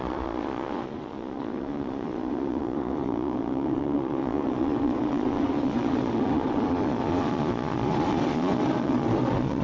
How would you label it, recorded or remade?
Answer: remade